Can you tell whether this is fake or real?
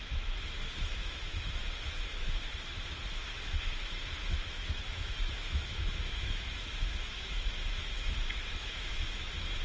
fake